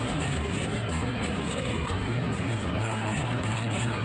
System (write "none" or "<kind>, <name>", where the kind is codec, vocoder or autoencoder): codec, SNAC